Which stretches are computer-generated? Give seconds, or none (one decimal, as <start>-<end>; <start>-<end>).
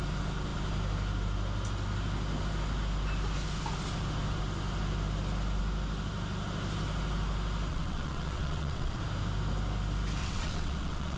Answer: 7.7-9.0; 10.2-11.2